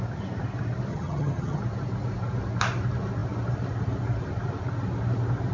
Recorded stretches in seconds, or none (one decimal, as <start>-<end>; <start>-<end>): 0.0-0.9; 1.6-5.5